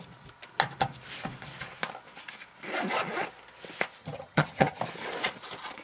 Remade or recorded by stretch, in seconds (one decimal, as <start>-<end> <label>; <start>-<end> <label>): 0.0-4.0 recorded; 4.0-4.8 remade; 4.8-5.8 recorded